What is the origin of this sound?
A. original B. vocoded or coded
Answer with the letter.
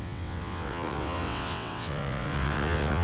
B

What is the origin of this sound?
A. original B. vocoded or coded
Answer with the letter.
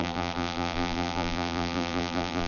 B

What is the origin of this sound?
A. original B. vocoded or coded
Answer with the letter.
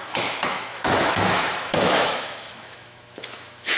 B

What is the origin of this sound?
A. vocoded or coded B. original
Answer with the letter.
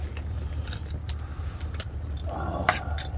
B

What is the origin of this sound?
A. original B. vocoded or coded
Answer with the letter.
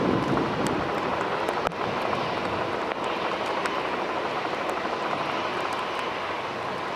A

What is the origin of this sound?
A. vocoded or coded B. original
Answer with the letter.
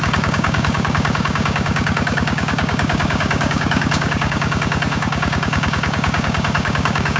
A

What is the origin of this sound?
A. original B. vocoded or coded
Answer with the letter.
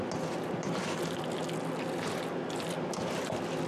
A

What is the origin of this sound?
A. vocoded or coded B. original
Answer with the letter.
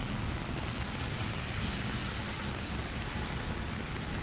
B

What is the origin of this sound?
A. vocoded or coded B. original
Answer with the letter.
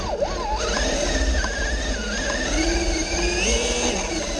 B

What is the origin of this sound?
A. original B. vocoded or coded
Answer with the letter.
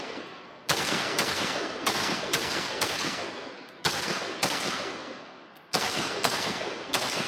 B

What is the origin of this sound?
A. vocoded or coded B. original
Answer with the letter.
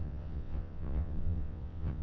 A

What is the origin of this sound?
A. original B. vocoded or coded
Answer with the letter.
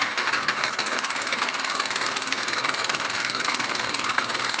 B